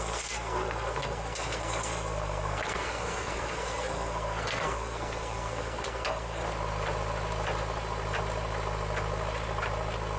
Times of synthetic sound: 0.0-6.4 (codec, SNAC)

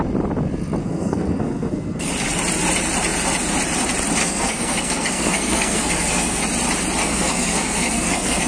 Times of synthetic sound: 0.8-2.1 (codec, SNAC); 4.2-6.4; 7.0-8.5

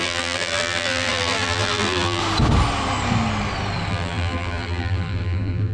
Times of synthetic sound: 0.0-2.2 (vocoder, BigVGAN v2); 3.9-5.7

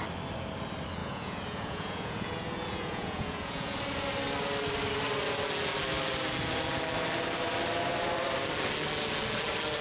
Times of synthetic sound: 1.0-3.8 (vocoder, Vocos)

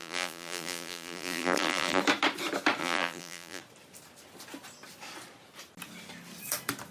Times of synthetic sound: 0.0-2.0 (vocoder, BigVGAN v2); 2.8-3.6